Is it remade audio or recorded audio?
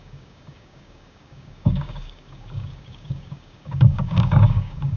remade